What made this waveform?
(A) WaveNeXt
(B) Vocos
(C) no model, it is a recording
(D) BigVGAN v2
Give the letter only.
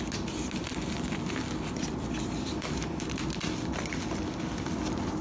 C